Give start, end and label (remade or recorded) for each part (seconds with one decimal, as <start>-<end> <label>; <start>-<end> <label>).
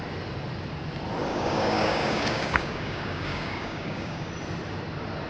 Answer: 0.0-1.3 recorded; 1.3-4.3 remade; 4.3-5.3 recorded